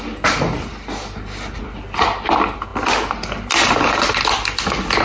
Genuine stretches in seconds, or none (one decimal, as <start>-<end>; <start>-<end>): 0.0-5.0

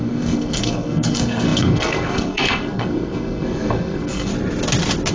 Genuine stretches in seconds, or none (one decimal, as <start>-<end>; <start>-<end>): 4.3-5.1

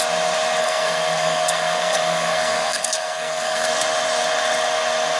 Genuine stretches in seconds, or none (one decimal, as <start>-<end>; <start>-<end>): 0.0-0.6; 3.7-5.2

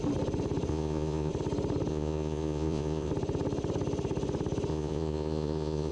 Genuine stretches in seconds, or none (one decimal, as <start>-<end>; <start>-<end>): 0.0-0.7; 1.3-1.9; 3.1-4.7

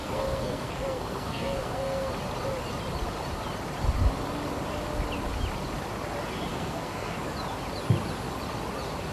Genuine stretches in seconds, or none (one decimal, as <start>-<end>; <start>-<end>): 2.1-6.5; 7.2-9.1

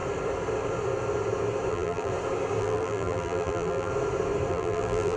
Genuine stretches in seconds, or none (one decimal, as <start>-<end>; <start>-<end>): 0.0-1.7; 2.1-2.6; 3.9-4.5